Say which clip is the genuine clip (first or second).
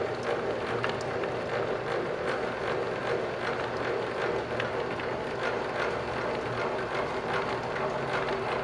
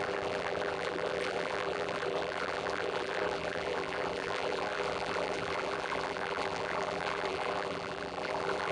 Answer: first